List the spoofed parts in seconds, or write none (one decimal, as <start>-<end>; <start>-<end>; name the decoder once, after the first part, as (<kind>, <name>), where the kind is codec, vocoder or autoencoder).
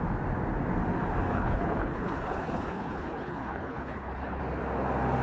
1.3-4.4 (codec, HILCodec)